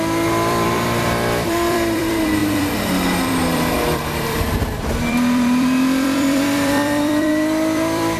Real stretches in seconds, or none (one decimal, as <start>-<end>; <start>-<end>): none